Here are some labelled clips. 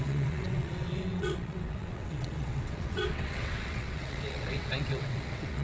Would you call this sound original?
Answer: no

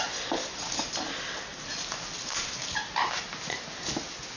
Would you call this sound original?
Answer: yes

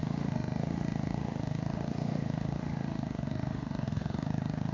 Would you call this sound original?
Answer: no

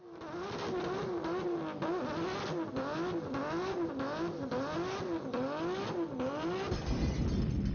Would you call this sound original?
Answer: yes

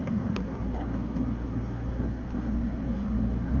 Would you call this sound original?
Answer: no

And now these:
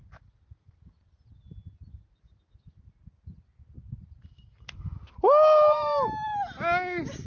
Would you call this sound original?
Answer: yes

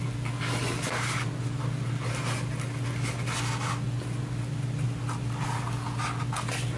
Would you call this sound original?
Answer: yes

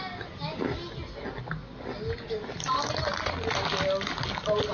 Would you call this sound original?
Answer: yes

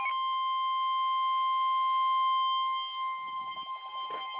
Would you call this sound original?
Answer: yes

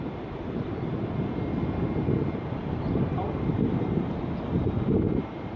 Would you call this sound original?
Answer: yes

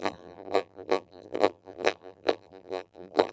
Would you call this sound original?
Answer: no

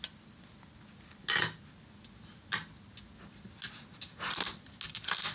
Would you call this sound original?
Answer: yes